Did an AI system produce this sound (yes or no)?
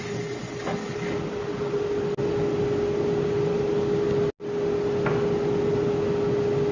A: no